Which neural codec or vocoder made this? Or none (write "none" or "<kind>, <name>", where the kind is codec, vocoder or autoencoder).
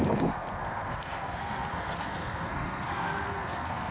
codec, SNAC